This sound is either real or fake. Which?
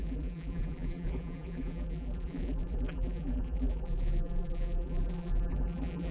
fake